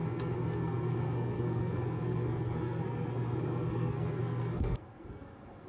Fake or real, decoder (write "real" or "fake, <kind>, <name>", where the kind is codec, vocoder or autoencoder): fake, codec, SNAC